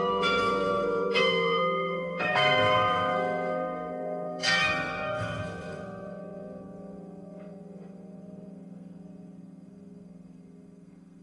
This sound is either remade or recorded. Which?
remade